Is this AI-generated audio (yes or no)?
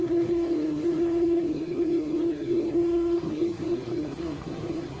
yes